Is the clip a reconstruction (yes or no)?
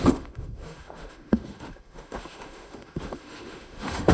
yes